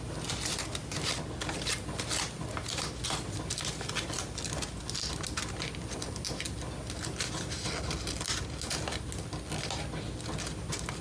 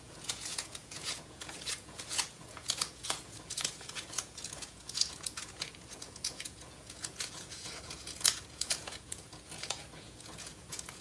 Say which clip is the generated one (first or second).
second